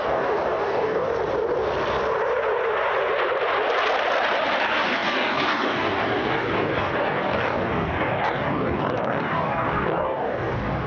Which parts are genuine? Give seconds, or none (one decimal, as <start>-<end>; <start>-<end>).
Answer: 1.1-4.6

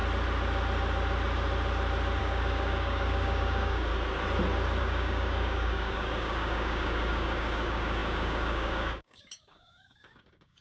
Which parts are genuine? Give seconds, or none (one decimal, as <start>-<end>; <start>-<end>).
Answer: 0.0-2.2; 3.9-4.8